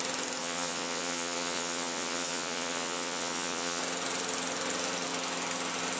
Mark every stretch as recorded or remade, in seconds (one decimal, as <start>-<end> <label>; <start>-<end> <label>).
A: 0.0-0.4 recorded; 0.4-3.8 remade; 3.8-6.0 recorded